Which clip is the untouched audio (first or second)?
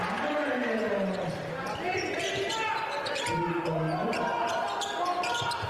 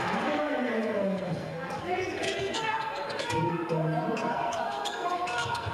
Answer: first